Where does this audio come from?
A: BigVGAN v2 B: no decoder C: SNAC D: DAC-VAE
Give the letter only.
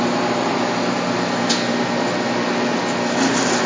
B